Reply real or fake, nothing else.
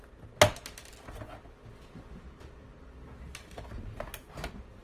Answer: real